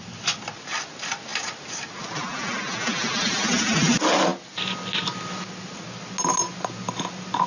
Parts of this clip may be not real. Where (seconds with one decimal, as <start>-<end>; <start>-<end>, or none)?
none